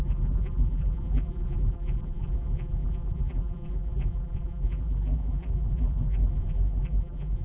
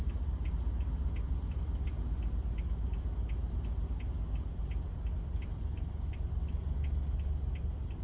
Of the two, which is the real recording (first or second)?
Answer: second